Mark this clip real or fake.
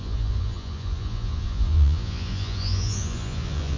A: fake